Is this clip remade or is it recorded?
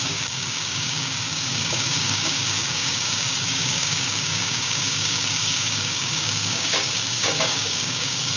remade